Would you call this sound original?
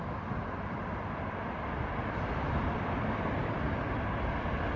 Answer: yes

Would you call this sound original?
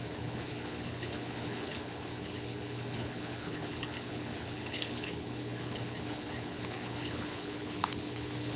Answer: no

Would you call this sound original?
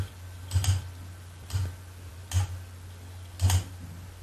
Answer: yes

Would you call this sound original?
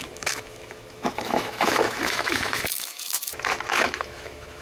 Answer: no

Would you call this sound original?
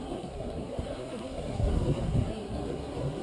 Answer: no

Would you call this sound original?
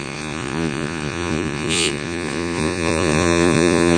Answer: no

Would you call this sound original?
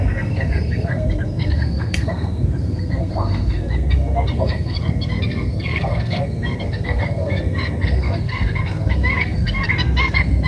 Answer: no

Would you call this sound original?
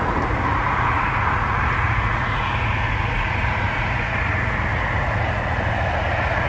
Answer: no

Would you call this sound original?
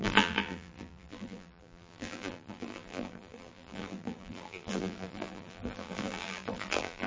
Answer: no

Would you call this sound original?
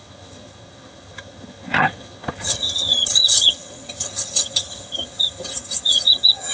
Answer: no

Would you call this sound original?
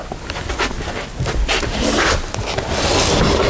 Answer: yes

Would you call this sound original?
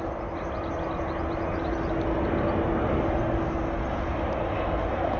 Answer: yes